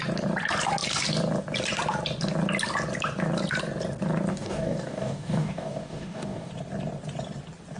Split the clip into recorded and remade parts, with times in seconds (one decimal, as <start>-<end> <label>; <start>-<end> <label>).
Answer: 0.0-4.3 recorded; 4.3-6.5 remade; 6.5-7.8 recorded